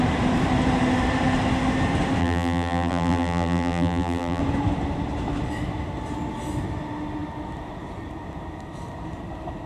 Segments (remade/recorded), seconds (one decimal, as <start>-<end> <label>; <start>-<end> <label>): 0.0-2.2 recorded; 2.2-4.4 remade; 4.4-9.7 recorded